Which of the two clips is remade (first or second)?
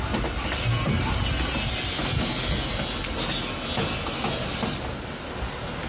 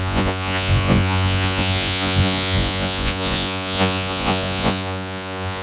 second